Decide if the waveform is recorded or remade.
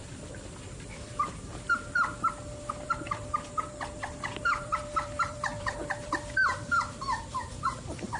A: remade